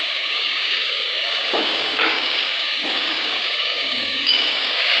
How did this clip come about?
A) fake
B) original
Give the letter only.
A